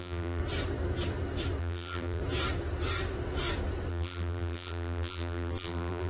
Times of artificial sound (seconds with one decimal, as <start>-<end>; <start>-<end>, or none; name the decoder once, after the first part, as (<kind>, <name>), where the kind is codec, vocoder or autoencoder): 0.0-0.4 (vocoder, BigVGAN v2); 1.6-2.2; 3.9-6.1